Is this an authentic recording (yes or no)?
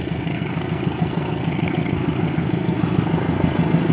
no